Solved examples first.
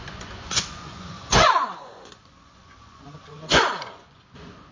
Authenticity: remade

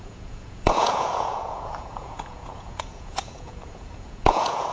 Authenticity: remade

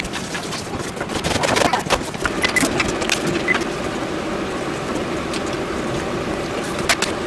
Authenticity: recorded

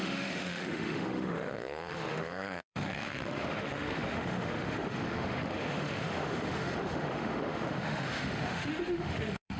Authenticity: remade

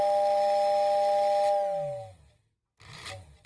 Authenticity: recorded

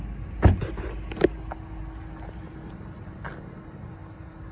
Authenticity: recorded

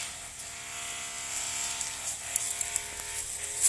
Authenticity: recorded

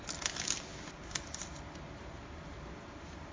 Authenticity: recorded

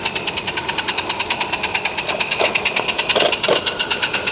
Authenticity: recorded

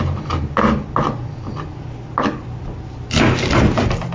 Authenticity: recorded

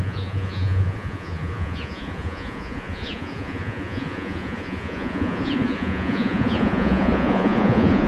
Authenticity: remade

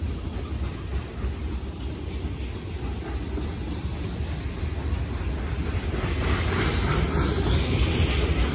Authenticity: recorded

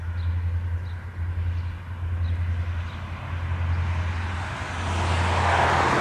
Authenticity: recorded